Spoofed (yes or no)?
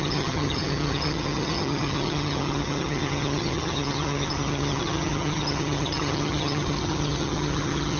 yes